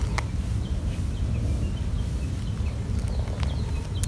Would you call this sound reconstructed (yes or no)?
no